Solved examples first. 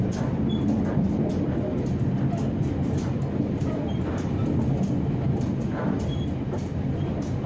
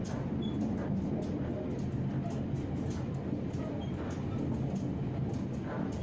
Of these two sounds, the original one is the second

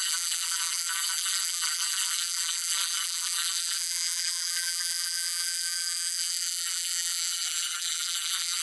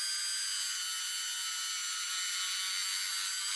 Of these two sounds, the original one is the second